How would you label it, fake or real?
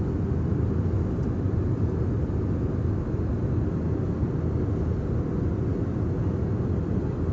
real